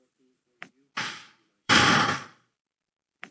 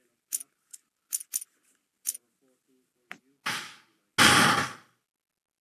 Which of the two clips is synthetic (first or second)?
first